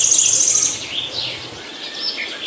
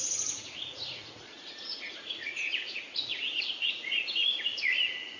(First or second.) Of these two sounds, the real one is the first